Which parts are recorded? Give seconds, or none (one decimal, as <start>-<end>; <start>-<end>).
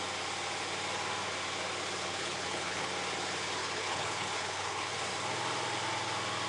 0.0-2.1; 2.9-3.6; 4.9-6.5